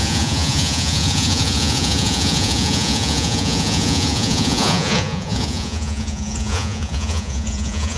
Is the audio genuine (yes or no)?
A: no